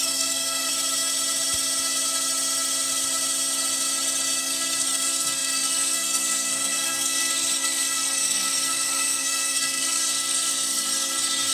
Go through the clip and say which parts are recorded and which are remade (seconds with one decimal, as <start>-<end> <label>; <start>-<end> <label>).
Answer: 0.0-0.7 remade; 0.7-4.4 recorded; 4.4-11.5 remade